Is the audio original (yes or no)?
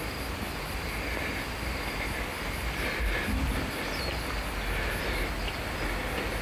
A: no